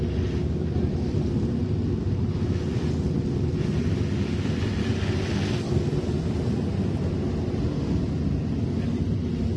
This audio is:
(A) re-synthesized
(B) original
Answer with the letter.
B